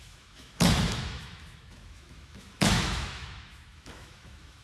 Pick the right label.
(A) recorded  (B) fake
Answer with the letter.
B